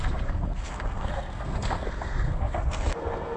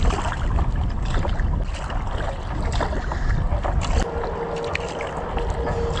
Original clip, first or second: second